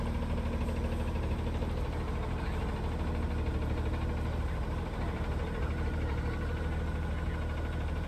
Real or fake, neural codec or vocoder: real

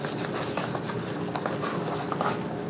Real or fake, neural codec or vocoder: real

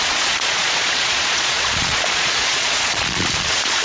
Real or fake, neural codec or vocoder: fake, vocoder, Vocos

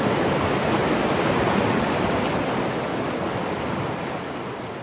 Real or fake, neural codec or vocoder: real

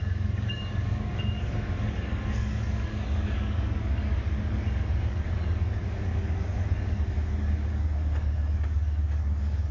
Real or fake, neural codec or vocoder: fake, codec, DAC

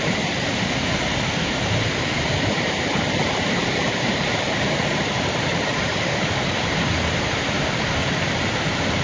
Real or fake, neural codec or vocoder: fake, vocoder, BigVGAN v2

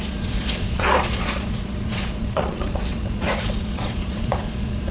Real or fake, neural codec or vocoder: fake, vocoder, Vocos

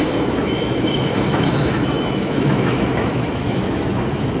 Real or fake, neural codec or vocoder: fake, autoencoder, DAC-VAE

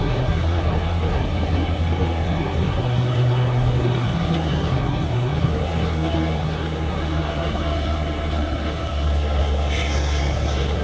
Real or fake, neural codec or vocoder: fake, codec, SNAC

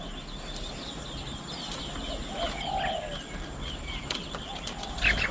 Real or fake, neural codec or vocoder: real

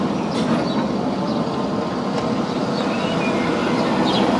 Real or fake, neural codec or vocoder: real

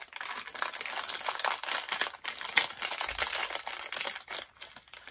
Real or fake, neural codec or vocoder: real